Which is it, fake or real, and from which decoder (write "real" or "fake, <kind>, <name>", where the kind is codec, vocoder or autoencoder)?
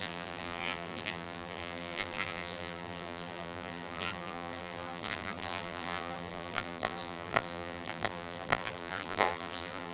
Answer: fake, vocoder, BigVGAN v2